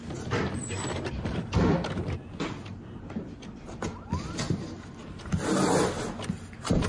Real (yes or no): yes